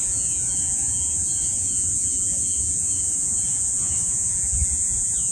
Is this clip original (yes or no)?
no